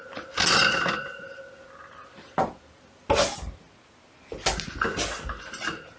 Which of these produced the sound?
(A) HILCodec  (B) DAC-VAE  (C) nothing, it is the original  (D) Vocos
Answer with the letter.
C